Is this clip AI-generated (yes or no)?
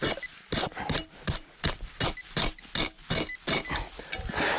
no